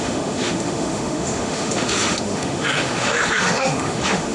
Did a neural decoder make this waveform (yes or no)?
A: yes